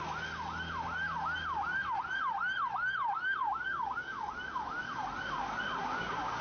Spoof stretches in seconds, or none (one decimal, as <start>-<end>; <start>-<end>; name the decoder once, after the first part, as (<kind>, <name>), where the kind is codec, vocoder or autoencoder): 3.4-4.2 (codec, DAC); 5.8-6.4